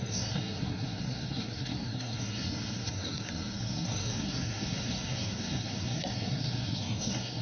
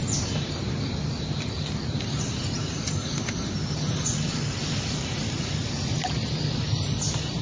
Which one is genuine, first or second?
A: second